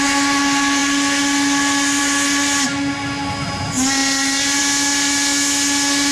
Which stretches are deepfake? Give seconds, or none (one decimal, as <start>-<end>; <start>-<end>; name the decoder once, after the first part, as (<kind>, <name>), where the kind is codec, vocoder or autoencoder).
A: none